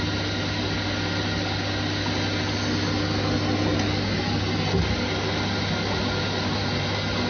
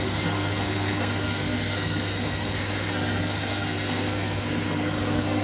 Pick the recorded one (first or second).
first